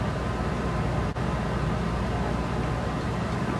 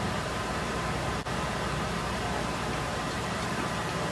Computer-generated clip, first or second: second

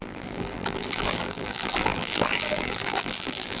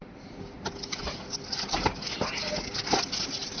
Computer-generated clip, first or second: first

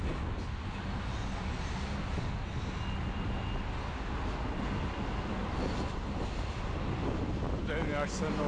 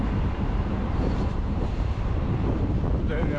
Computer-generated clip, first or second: second